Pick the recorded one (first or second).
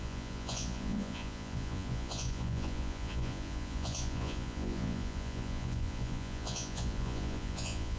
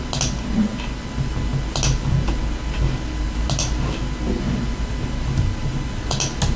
second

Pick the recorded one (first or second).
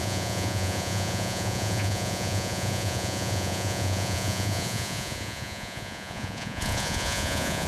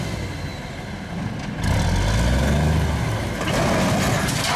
second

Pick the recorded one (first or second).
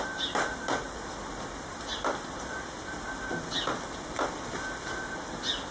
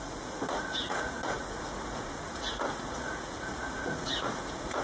first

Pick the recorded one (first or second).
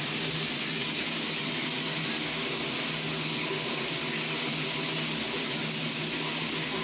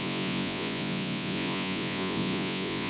first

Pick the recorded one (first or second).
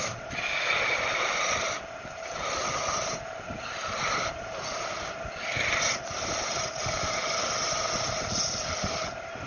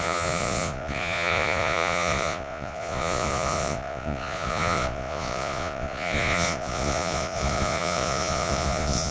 first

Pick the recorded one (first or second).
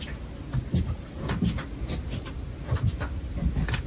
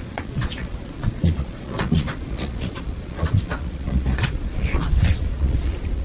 first